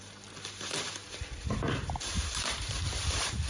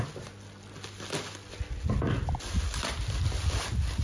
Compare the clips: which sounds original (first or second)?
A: second